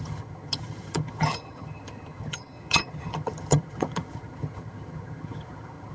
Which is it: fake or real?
fake